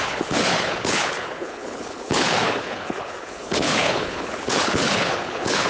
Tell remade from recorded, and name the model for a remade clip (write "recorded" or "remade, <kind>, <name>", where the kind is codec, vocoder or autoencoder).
remade, codec, HILCodec